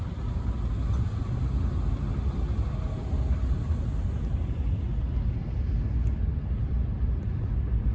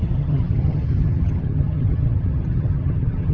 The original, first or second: first